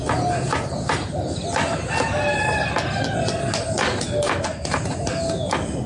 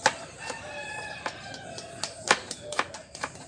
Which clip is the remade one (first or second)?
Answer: second